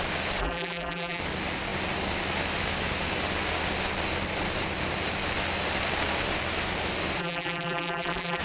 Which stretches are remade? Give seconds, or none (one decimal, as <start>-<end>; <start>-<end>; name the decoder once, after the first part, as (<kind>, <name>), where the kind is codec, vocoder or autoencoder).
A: 0.4-1.2 (vocoder, BigVGAN v2); 7.2-8.4